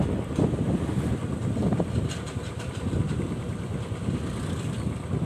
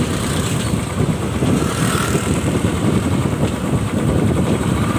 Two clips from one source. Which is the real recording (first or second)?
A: first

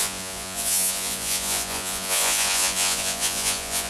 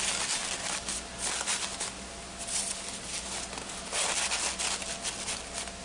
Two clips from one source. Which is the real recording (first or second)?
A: second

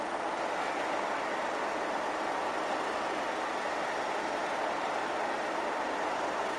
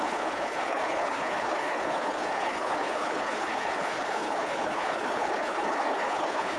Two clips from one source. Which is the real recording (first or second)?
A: first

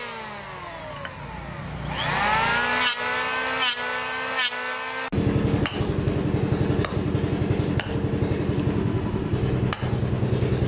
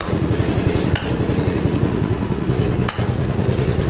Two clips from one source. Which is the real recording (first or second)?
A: first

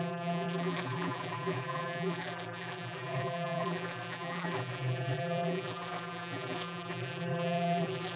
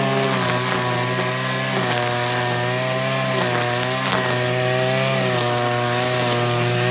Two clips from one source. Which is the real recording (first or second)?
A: second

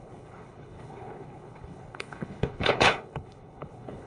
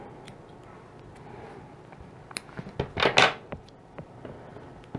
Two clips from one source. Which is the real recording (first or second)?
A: second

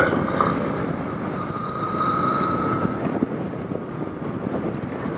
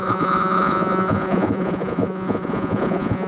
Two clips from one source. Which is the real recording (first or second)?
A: first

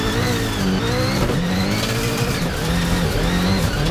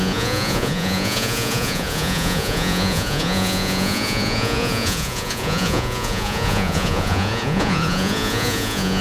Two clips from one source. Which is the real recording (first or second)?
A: first